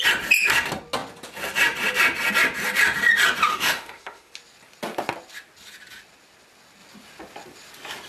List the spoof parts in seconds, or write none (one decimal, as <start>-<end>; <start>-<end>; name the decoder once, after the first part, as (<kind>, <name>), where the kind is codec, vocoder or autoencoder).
3.5-4.3 (autoencoder, DAC-VAE)